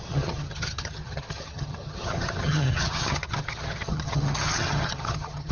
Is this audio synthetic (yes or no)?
yes